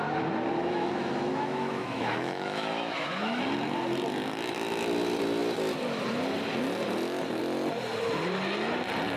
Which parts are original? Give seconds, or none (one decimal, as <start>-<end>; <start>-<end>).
0.0-0.6; 3.4-9.2